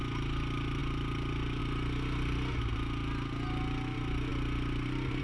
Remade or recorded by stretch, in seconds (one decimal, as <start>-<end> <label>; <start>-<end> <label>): 0.0-5.2 recorded